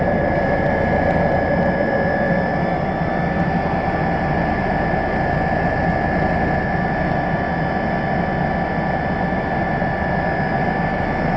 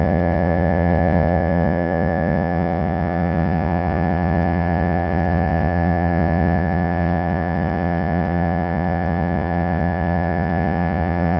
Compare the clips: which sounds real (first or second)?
first